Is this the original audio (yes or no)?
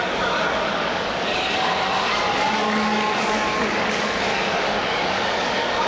no